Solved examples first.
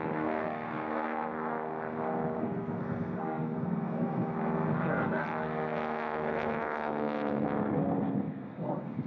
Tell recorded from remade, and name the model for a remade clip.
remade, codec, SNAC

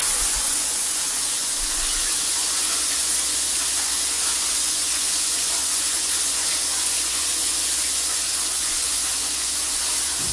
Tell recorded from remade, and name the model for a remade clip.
remade, vocoder, Vocos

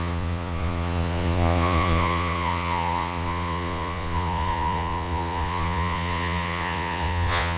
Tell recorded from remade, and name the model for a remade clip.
remade, vocoder, Vocos